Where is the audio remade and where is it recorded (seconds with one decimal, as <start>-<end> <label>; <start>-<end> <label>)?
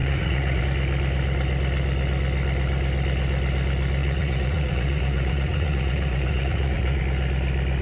0.0-0.6 remade; 0.6-4.0 recorded; 4.0-7.0 remade; 7.0-7.8 recorded